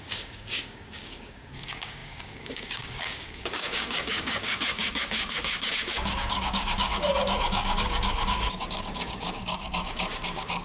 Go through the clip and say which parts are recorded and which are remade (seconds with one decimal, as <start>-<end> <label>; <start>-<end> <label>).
0.0-10.6 remade

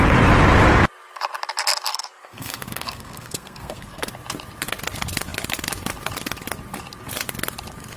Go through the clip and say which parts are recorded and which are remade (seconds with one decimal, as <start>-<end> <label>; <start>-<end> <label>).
0.0-1.9 recorded; 1.9-4.1 remade; 4.1-8.0 recorded

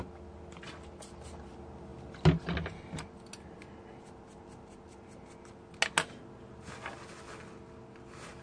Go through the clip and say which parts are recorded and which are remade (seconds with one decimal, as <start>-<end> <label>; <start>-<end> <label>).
0.0-8.4 recorded

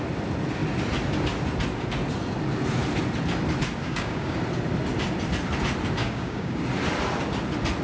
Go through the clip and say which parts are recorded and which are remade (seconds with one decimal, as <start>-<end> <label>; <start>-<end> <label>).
0.0-3.8 recorded; 3.8-4.4 remade; 4.4-6.0 recorded; 6.0-6.6 remade; 6.6-7.8 recorded